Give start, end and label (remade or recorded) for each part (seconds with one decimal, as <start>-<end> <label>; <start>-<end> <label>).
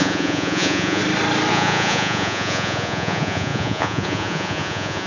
0.0-1.0 remade; 1.0-1.5 recorded; 1.5-5.1 remade